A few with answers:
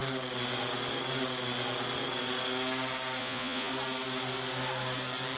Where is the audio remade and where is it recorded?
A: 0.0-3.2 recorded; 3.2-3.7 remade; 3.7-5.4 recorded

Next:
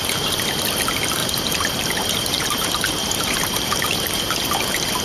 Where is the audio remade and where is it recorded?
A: 0.0-1.2 recorded; 1.2-4.2 remade; 4.2-5.0 recorded

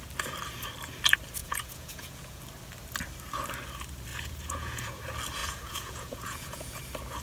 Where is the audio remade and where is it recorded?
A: 0.0-1.4 recorded; 1.4-2.4 remade; 2.4-4.1 recorded; 4.1-5.0 remade; 5.0-5.4 recorded; 5.4-6.8 remade; 6.8-7.2 recorded

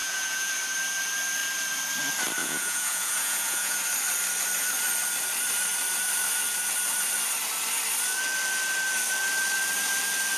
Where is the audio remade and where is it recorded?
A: 0.0-0.5 remade; 0.5-2.4 recorded; 2.4-3.8 remade; 3.8-10.4 recorded

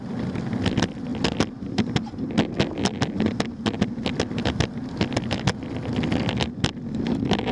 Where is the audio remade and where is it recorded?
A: 0.0-7.5 recorded

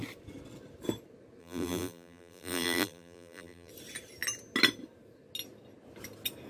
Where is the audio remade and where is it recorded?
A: 0.0-1.4 recorded; 1.4-3.7 remade; 3.7-6.5 recorded

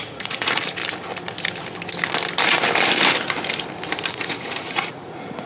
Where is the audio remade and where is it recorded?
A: 0.0-0.8 remade; 0.8-4.1 recorded; 4.1-5.5 remade

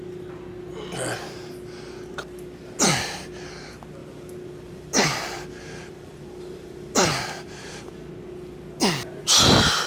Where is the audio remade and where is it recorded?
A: 0.0-4.0 recorded; 4.0-8.1 remade; 8.1-9.9 recorded